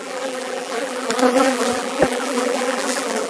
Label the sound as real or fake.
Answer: fake